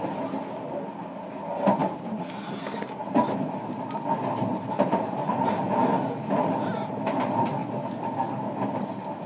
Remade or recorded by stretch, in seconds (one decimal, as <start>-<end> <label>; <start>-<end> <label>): 0.0-1.8 recorded; 1.8-2.4 remade; 2.4-4.5 recorded; 4.5-5.6 remade; 5.6-7.6 recorded; 7.6-8.1 remade; 8.1-9.3 recorded